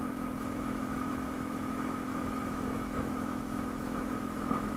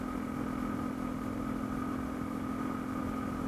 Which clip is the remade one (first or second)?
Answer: first